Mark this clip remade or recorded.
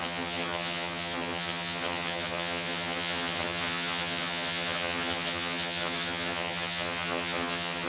remade